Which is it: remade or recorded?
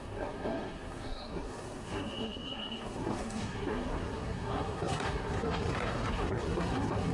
remade